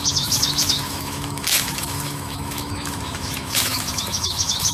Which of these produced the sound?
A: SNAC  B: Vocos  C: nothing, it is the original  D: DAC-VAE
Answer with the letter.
D